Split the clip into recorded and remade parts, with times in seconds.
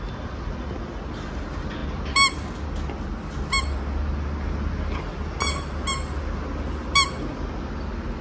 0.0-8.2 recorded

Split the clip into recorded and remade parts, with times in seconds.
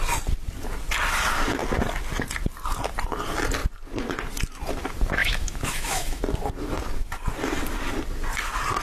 0.0-5.2 recorded; 5.2-6.2 remade; 6.2-8.8 recorded